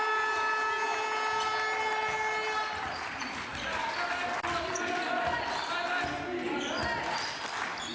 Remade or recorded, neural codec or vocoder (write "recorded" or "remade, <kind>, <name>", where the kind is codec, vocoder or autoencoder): recorded